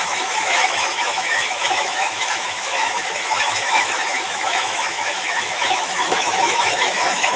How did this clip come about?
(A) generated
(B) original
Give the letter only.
A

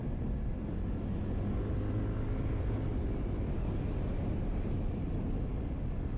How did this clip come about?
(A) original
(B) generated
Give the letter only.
A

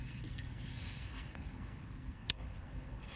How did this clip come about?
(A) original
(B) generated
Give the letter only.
B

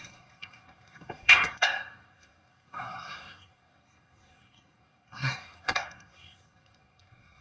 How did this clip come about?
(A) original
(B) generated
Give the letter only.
B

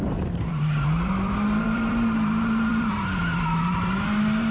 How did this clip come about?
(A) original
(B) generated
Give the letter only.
B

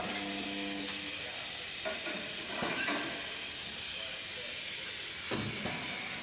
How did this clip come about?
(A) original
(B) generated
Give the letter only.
A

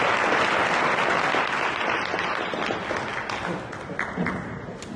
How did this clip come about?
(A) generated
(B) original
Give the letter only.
B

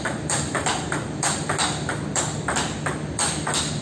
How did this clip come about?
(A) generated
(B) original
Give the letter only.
B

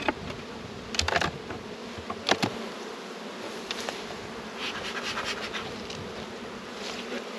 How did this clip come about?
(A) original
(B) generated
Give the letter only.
A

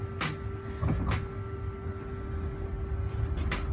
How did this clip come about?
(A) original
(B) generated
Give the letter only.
A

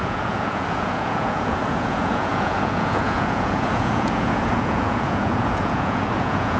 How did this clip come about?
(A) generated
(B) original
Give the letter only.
A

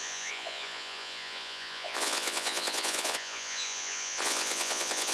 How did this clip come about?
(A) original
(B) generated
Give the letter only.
B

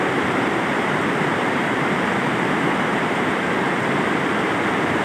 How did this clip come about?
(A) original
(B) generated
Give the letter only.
B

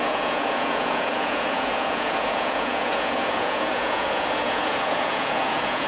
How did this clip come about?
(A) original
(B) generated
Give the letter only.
B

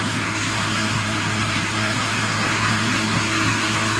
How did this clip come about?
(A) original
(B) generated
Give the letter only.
B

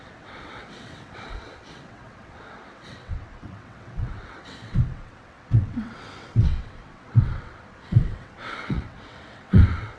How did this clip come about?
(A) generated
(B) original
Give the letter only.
A